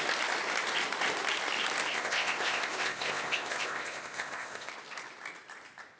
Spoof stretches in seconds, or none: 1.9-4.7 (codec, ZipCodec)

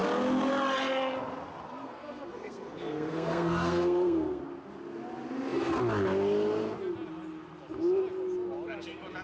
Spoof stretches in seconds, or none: 1.8-4.4 (codec, SNAC)